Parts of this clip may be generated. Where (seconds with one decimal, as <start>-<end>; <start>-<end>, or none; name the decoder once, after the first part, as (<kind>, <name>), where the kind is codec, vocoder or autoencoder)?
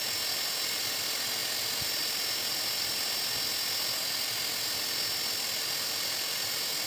none